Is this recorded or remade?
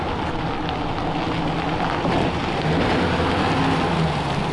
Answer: recorded